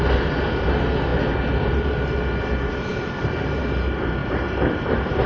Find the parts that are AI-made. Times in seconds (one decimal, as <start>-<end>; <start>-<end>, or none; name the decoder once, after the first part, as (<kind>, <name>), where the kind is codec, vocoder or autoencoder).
2.9-3.6 (vocoder, BigVGAN v2); 4.2-5.3